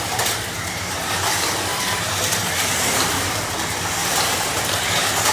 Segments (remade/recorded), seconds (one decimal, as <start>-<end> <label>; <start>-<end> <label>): 0.0-1.7 recorded; 1.7-3.5 remade; 3.5-4.0 recorded; 4.0-5.3 remade